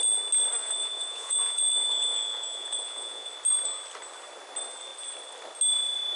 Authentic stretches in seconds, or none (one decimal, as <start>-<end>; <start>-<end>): 0.0-0.6; 3.3-6.2